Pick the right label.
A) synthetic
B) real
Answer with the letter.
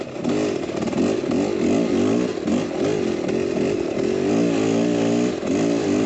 B